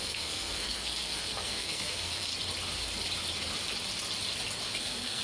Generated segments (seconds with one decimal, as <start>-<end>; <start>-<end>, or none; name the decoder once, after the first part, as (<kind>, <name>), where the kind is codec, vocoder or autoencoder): 0.0-2.3 (codec, SNAC); 4.8-5.2